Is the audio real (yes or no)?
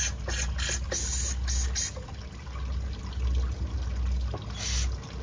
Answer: yes